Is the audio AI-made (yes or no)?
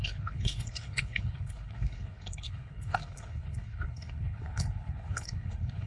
yes